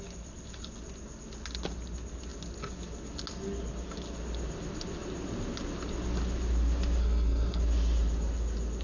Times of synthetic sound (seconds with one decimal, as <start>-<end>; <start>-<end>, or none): 7.0-7.6